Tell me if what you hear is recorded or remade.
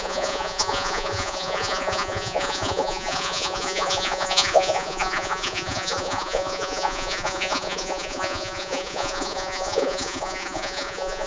remade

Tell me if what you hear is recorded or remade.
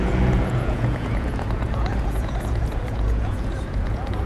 remade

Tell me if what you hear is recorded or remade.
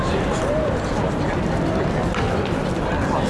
recorded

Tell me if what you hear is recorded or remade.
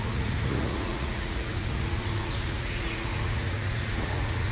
remade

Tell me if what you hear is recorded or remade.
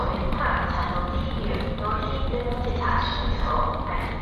recorded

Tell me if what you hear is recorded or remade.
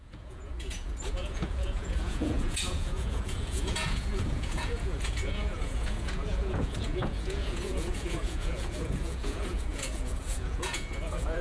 remade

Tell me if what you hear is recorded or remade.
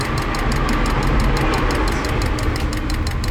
recorded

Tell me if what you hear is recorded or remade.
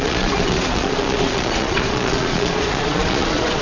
remade